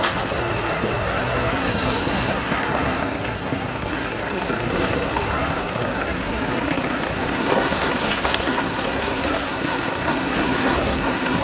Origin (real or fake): fake